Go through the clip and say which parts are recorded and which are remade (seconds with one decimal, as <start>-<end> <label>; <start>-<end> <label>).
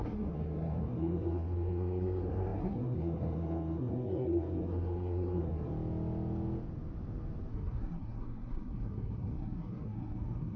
0.0-5.7 remade; 5.7-7.5 recorded; 7.5-10.6 remade